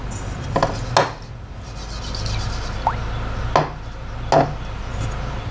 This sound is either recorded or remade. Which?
recorded